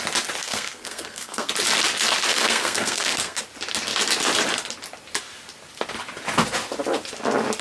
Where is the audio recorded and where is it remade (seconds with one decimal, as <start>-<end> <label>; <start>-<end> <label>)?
0.0-0.4 recorded; 0.4-1.5 remade; 1.5-2.3 recorded; 2.3-3.4 remade; 3.4-7.6 recorded